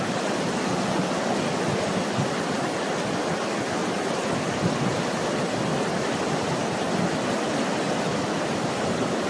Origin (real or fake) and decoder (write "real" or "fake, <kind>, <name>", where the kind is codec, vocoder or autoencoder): real